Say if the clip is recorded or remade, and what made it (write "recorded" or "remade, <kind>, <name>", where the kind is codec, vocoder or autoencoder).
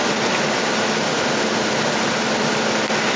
recorded